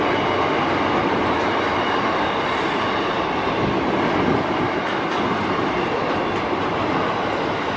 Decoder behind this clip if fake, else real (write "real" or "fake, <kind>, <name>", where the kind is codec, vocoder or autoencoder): real